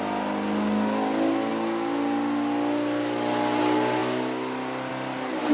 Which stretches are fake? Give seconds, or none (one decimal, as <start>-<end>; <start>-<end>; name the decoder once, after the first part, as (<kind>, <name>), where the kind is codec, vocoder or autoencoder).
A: none